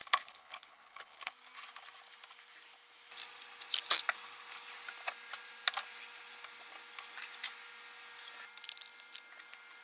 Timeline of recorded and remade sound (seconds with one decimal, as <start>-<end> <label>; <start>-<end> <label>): 0.0-1.3 remade; 1.3-9.8 recorded